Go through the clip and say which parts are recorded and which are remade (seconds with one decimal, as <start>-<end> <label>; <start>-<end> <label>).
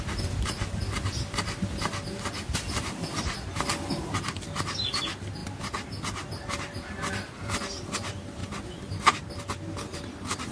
0.0-10.5 recorded